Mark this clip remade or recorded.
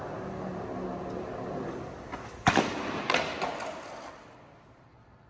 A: recorded